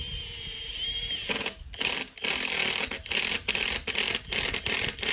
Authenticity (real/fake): real